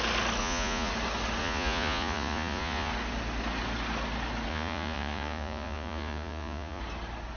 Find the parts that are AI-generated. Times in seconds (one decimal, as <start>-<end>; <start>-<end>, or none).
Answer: 0.4-0.9; 1.4-2.9; 4.5-6.8